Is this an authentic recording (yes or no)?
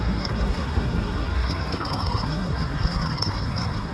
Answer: no